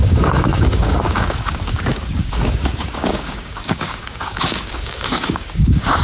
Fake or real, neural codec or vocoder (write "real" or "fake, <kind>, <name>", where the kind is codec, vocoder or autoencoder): fake, codec, DAC